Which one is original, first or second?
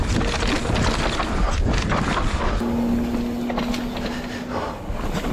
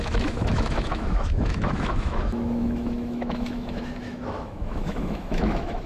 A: first